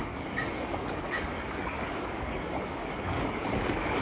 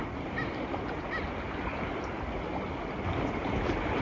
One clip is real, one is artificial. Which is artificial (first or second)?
first